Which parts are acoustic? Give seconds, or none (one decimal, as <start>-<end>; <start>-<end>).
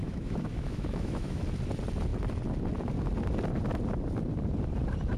1.4-5.2